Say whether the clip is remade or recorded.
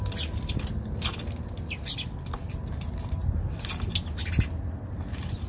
recorded